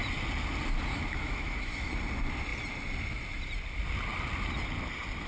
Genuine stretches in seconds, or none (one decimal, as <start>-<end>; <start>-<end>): 0.0-0.9; 1.9-5.3